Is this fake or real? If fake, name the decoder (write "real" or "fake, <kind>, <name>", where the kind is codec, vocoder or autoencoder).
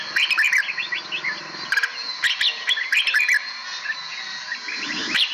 real